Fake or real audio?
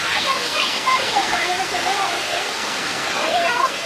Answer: fake